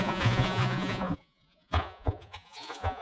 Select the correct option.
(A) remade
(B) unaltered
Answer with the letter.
A